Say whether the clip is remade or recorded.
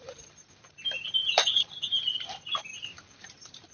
remade